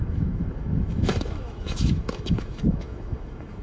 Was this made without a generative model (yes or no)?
no